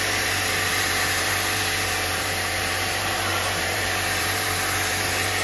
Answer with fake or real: fake